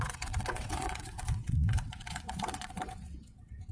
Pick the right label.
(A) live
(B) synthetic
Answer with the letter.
B